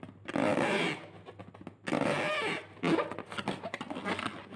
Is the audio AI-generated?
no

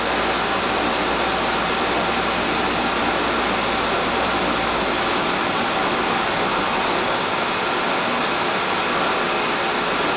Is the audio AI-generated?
no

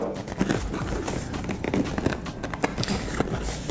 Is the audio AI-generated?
no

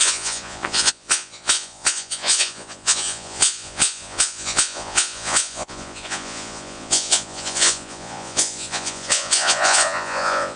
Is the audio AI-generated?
yes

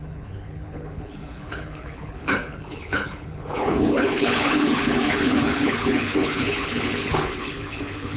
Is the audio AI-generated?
yes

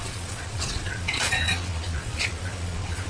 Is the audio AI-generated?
yes